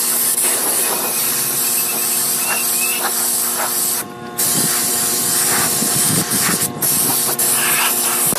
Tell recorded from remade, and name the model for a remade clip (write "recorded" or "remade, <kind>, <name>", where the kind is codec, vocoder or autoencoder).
recorded